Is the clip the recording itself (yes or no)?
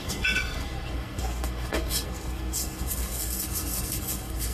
no